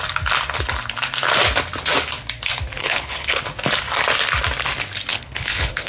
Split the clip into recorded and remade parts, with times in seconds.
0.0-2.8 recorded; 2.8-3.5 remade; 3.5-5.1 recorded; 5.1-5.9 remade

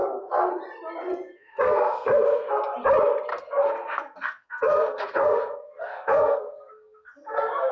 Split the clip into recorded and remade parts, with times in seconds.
0.0-0.5 remade; 0.5-1.1 recorded; 1.1-2.5 remade; 2.5-3.3 recorded; 3.3-7.7 remade

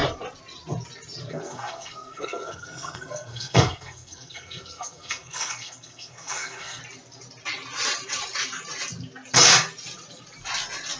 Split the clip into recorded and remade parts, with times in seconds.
0.0-1.3 recorded; 1.3-6.8 remade; 6.8-11.0 recorded

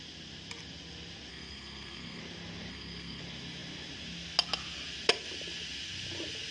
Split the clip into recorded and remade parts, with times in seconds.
0.0-1.3 recorded; 1.3-2.2 remade; 2.2-2.7 recorded; 2.7-3.2 remade; 3.2-6.5 recorded

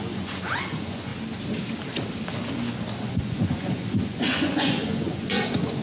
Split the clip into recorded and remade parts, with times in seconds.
0.0-1.1 remade; 1.1-3.0 recorded; 3.0-5.8 remade

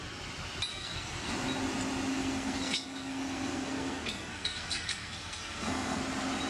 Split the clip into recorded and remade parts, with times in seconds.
0.0-0.7 recorded; 0.7-1.3 remade; 1.3-2.1 recorded; 2.1-6.0 remade; 6.0-6.5 recorded